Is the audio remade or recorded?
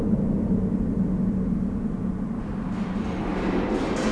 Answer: recorded